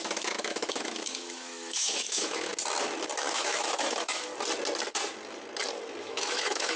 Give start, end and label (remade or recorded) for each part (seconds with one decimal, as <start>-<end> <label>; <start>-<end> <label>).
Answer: 0.0-2.5 remade; 2.5-3.2 recorded; 3.2-4.3 remade; 4.3-6.0 recorded; 6.0-6.8 remade